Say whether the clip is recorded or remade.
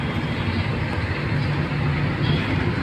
recorded